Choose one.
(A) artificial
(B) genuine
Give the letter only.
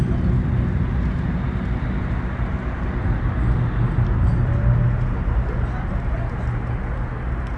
B